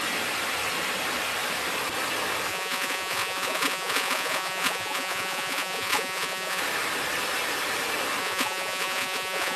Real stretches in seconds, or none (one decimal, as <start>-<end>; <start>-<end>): 0.0-2.5; 6.6-8.2